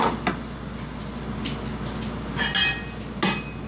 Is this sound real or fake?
real